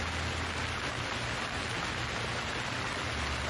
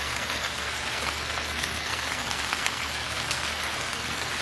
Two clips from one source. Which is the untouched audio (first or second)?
first